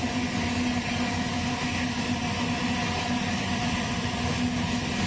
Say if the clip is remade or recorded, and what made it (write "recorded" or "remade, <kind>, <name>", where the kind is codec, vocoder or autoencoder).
recorded